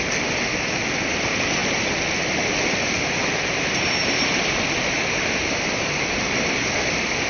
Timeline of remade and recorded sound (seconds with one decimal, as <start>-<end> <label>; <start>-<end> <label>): 0.0-7.3 recorded